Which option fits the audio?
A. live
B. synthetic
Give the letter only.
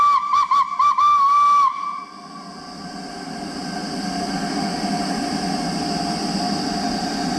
A